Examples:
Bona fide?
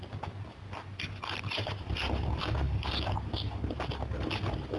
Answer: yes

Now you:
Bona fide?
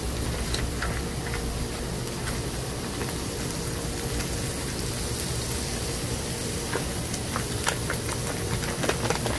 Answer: yes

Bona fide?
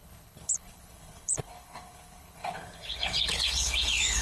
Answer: no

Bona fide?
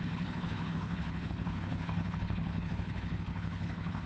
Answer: no